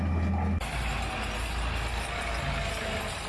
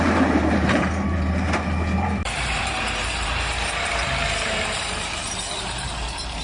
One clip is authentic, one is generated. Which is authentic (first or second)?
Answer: first